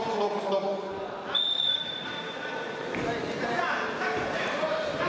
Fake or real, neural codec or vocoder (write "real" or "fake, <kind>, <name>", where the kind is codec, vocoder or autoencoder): fake, vocoder, BigVGAN v2